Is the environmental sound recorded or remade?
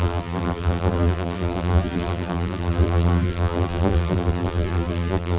remade